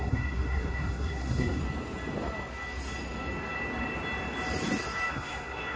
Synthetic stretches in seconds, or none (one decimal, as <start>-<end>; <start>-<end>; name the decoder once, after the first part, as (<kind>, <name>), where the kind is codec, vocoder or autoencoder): 0.0-1.6 (codec, SNAC); 5.1-5.8